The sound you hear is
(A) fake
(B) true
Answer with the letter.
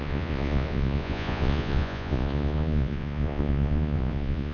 A